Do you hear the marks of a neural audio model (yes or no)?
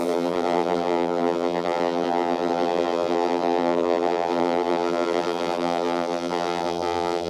yes